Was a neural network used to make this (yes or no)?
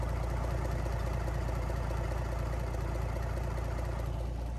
no